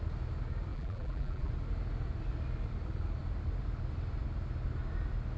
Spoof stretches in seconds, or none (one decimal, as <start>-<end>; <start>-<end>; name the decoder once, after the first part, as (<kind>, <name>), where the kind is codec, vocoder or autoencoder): 0.7-1.5 (vocoder, BigVGAN v2)